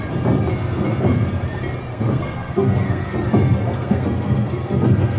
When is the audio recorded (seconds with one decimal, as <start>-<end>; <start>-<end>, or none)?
0.0-1.9